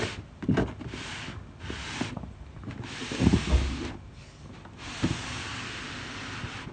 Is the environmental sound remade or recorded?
recorded